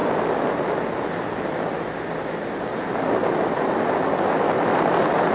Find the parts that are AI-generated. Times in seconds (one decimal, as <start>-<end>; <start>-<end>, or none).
3.2-3.8; 4.7-5.3